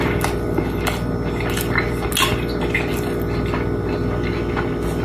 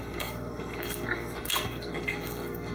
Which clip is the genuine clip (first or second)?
first